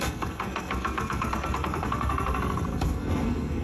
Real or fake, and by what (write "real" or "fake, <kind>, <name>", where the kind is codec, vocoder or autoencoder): fake, codec, SNAC